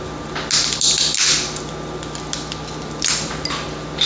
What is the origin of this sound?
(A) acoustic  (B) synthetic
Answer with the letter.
A